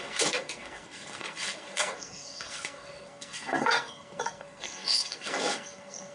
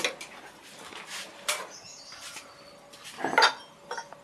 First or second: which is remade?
first